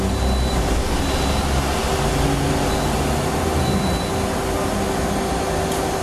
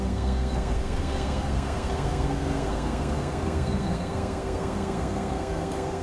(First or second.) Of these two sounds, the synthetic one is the second